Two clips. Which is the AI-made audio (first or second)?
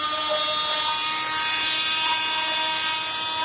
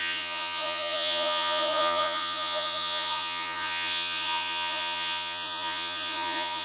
second